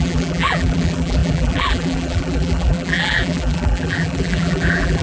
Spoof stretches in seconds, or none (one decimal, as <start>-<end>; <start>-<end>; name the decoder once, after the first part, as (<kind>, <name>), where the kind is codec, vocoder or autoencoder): 0.0-5.0 (vocoder, BigVGAN v2)